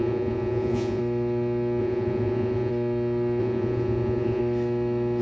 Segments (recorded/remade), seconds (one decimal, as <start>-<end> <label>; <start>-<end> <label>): 0.0-1.0 remade; 1.0-1.8 recorded; 1.8-2.7 remade; 2.7-3.4 recorded; 3.4-4.4 remade; 4.4-5.2 recorded